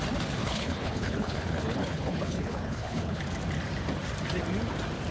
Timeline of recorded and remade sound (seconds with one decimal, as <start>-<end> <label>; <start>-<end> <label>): 0.0-0.4 recorded; 0.4-3.2 remade; 3.2-5.1 recorded